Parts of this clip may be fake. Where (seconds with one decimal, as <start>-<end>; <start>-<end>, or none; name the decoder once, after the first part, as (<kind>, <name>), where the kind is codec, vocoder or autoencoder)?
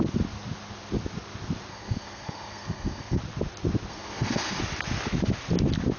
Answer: 1.7-3.2 (codec, SNAC); 3.9-4.6